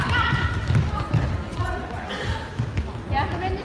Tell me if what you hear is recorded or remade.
recorded